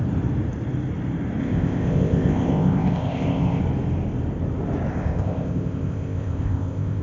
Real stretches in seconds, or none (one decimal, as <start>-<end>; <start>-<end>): 0.0-1.4; 3.6-4.9